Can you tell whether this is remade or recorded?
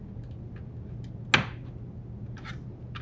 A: recorded